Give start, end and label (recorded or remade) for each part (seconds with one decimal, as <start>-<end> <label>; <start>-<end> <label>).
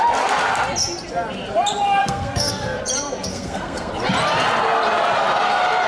0.0-2.0 recorded; 2.0-2.8 remade; 2.8-3.3 recorded; 3.3-3.9 remade; 3.9-5.9 recorded